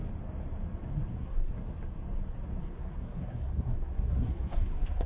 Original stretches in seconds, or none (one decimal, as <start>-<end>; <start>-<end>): 0.0-1.1; 1.5-2.6